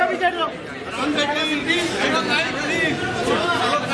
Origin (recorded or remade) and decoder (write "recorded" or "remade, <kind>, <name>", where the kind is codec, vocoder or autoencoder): recorded